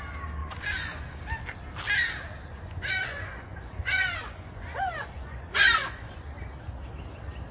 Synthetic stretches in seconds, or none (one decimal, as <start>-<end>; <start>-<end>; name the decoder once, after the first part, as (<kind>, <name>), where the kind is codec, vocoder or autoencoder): 0.4-1.0 (vocoder, Vocos); 2.5-6.3